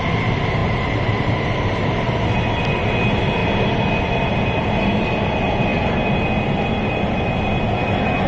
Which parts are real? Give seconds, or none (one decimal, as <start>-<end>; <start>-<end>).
0.0-0.6; 2.4-8.3

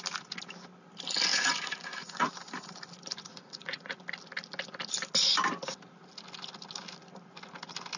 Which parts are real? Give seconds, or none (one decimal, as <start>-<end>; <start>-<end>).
0.0-1.3; 2.3-3.3; 4.0-8.0

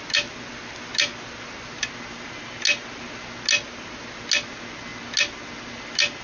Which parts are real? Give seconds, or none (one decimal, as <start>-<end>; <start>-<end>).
0.0-6.2

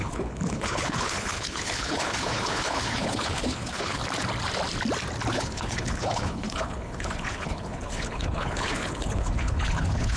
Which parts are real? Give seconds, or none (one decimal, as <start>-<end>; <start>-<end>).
4.0-5.3

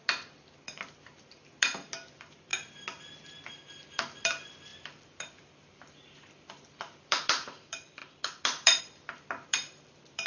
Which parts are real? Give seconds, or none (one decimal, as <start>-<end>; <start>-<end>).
2.5-3.5

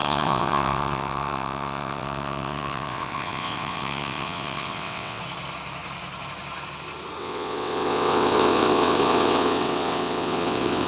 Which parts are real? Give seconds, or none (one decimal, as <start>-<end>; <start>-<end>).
5.2-7.2